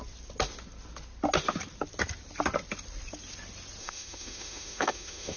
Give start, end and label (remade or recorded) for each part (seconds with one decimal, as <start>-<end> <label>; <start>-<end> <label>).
0.0-3.8 recorded; 3.8-5.4 remade